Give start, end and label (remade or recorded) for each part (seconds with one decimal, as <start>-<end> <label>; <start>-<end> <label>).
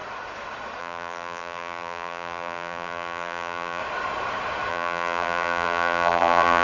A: 0.0-0.8 recorded; 0.8-3.8 remade; 3.8-4.7 recorded; 4.7-6.6 remade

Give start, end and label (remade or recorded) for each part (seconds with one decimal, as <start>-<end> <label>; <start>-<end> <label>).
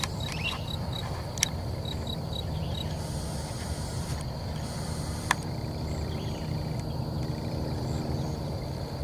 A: 0.0-9.0 remade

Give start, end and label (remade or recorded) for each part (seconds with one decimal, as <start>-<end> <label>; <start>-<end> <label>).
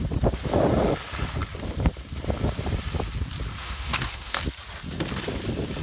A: 0.0-3.6 recorded; 3.6-4.4 remade; 4.4-5.8 recorded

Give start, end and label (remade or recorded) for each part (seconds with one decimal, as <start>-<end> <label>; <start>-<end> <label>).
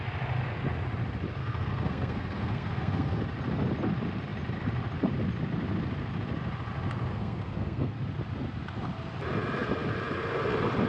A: 0.0-1.4 recorded; 1.4-3.2 remade; 3.2-7.1 recorded; 7.1-7.9 remade; 7.9-10.9 recorded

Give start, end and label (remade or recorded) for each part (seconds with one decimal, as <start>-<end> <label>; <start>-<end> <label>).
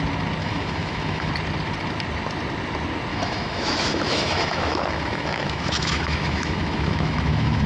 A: 0.0-0.4 recorded; 0.4-1.3 remade; 1.3-3.1 recorded; 3.1-7.7 remade